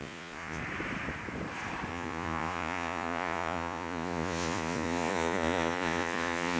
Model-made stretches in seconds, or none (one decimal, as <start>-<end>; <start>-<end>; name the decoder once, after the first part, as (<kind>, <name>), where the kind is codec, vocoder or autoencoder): 0.0-0.6 (vocoder, Vocos); 1.9-6.6